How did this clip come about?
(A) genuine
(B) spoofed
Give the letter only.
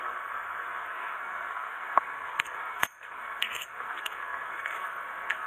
B